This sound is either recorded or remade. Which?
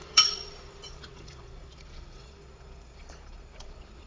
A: remade